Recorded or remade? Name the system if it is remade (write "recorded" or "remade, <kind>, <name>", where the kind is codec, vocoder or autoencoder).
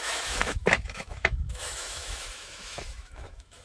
remade, autoencoder, DAC-VAE